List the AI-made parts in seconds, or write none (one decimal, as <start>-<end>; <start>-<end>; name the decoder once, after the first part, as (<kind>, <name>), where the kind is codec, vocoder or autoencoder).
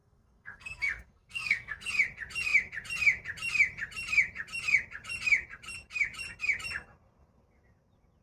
0.0-1.9 (codec, SNAC)